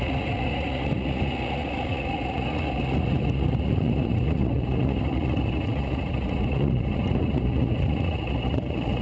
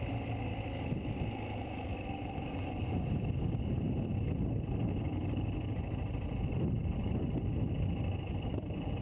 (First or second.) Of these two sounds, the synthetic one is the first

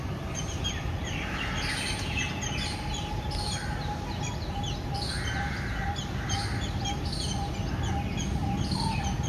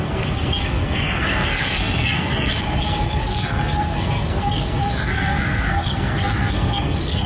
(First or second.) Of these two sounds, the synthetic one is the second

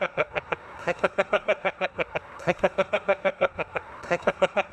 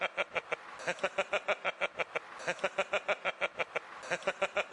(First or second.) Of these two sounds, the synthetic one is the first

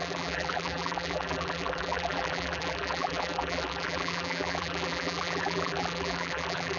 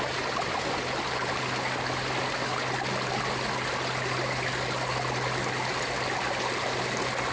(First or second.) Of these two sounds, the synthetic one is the first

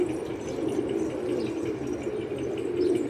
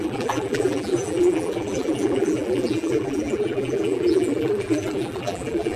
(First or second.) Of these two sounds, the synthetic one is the second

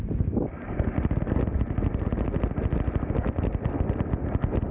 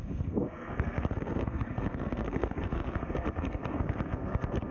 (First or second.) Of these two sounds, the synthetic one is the second